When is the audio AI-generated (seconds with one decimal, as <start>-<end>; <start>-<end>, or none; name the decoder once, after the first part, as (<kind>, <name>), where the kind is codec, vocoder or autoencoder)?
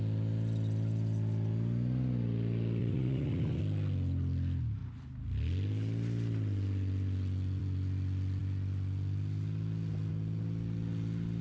2.8-3.6 (vocoder, Vocos)